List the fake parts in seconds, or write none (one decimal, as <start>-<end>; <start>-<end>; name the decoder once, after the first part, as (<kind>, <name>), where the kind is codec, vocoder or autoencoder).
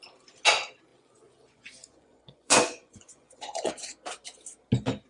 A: 0.9-3.7 (vocoder, Vocos)